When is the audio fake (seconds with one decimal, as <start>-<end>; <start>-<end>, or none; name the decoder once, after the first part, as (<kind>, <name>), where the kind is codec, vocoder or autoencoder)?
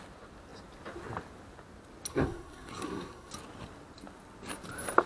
2.1-3.3 (codec, SNAC)